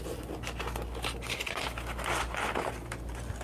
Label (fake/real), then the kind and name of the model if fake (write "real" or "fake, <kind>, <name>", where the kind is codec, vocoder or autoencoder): real